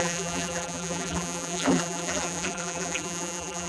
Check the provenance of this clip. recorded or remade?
remade